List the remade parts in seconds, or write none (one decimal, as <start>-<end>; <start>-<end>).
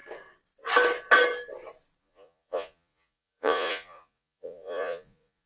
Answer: 2.0-5.5